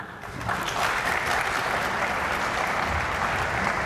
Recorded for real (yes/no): no